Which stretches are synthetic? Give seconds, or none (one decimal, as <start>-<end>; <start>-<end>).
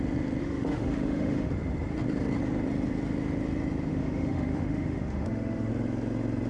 0.4-1.5; 3.9-5.7